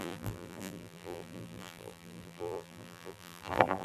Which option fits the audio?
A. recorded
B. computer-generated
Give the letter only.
B